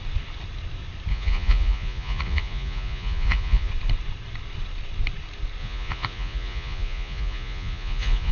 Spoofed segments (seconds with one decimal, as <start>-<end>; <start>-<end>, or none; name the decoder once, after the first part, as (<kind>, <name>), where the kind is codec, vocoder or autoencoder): 1.1-3.7 (vocoder, Vocos); 5.6-8.3